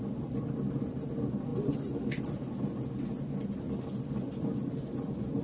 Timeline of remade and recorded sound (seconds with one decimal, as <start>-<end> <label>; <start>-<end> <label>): 0.0-5.4 recorded